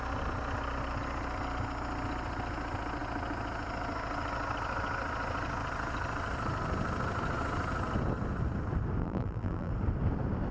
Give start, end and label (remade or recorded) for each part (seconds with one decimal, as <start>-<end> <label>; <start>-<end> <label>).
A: 0.0-9.0 recorded; 9.0-9.7 remade; 9.7-10.5 recorded